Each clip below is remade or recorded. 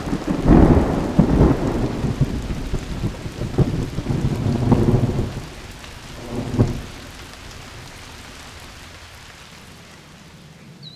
recorded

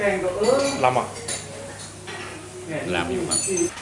recorded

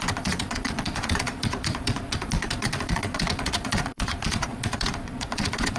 remade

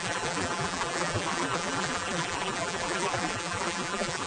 remade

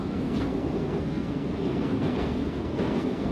remade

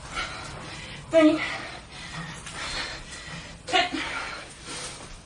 recorded